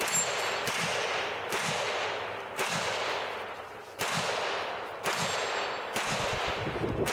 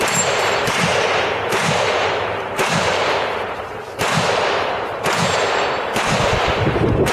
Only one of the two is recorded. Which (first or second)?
first